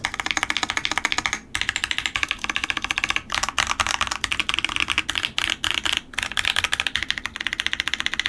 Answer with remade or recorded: recorded